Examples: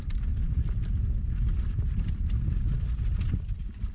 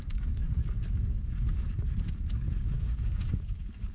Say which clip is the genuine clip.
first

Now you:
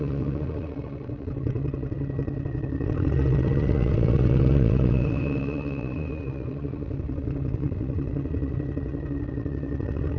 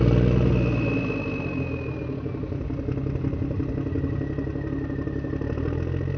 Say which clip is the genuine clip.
second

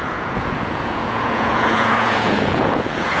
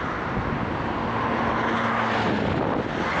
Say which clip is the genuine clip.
second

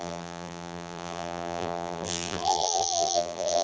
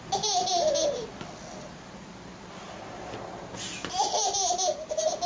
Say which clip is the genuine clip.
second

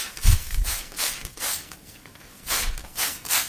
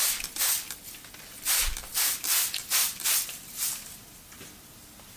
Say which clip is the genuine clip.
second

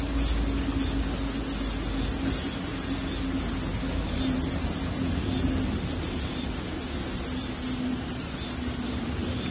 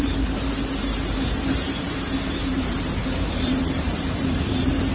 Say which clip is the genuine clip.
first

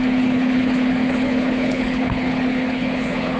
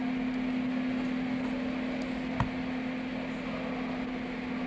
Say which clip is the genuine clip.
second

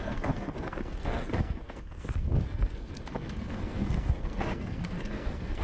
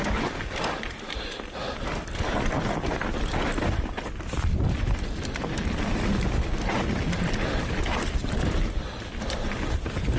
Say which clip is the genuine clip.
second